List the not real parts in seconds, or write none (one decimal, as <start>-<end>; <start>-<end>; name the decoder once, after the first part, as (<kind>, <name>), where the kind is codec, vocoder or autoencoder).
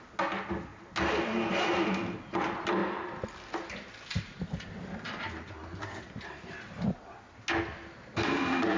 none